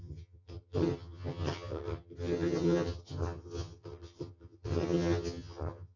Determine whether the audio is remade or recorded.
remade